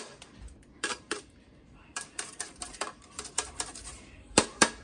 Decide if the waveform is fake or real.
fake